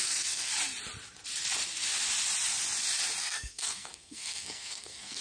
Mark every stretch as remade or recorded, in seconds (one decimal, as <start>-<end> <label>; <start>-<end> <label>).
0.0-0.5 remade; 0.5-3.2 recorded; 3.2-5.2 remade